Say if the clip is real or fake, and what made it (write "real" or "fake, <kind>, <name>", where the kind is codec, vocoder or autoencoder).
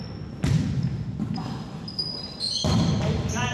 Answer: real